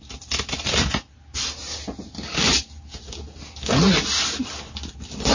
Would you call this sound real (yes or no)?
yes